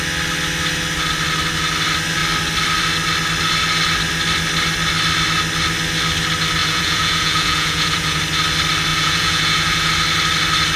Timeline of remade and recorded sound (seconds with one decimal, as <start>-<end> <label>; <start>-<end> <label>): 0.0-6.6 recorded; 6.6-8.2 remade; 8.2-8.9 recorded; 8.9-9.9 remade; 9.9-10.8 recorded